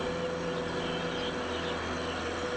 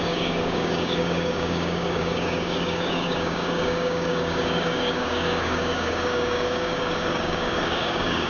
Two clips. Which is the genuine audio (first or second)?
first